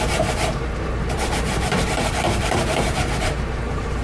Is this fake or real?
fake